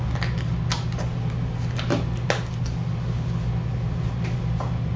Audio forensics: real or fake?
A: real